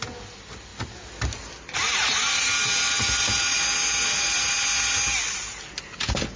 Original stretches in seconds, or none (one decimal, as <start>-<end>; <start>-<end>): 0.0-6.4